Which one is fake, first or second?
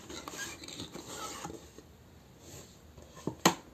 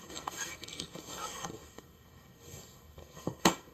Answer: second